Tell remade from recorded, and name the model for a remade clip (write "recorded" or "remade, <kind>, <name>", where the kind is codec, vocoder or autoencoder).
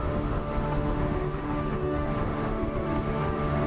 remade, autoencoder, DAC-VAE